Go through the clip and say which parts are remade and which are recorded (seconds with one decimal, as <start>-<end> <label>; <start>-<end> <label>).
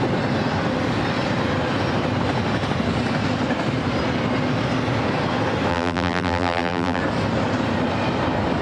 0.0-5.7 recorded; 5.7-7.0 remade; 7.0-8.6 recorded